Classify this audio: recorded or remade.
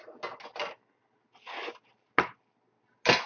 recorded